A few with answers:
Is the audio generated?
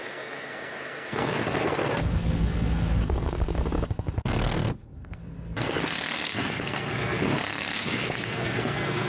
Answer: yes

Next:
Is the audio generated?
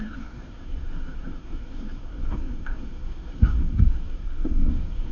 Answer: yes